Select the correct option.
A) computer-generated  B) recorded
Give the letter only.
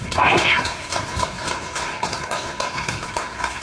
A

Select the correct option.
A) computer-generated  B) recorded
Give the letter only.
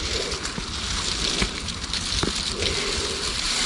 B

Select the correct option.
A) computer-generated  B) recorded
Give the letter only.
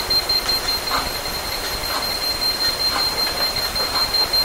B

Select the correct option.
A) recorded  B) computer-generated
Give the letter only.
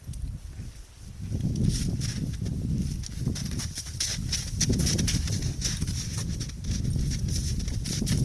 A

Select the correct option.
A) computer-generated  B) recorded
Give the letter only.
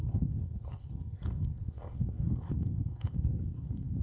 A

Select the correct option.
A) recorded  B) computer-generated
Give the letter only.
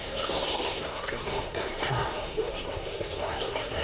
B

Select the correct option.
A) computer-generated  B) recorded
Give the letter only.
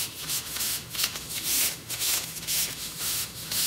A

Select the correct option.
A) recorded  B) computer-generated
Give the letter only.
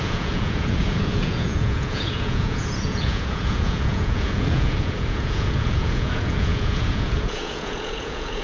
B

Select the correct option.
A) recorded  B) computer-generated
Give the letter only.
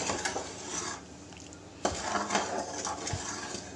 B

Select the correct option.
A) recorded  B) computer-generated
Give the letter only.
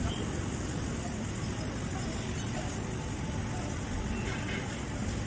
A